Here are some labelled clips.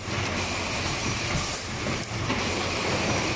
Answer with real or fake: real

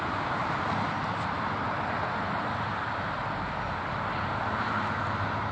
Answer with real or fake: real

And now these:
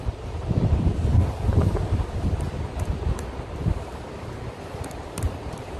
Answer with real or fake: fake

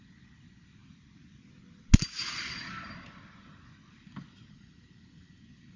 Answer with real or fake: real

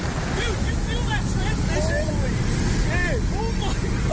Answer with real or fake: real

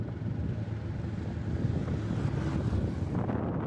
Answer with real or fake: real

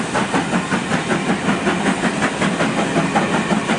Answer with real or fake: real